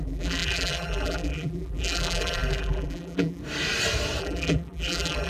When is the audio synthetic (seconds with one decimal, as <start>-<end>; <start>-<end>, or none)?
0.0-3.4; 4.2-5.3